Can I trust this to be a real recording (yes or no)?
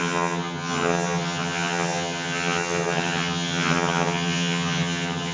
no